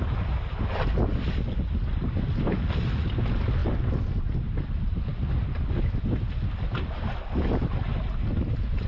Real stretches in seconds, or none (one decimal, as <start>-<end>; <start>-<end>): 0.0-8.9